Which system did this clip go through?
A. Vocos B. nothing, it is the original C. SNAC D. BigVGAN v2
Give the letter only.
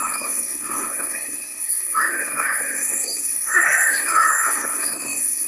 C